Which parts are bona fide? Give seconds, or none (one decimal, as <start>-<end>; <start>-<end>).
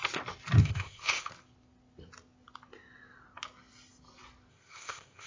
0.0-0.6; 1.3-4.5